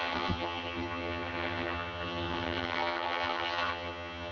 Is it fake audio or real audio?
fake